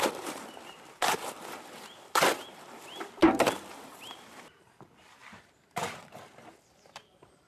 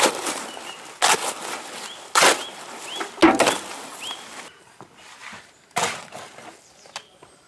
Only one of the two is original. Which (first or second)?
second